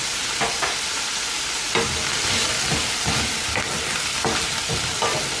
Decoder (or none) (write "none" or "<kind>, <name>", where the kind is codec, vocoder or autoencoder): none